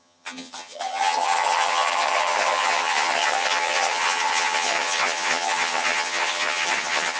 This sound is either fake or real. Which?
fake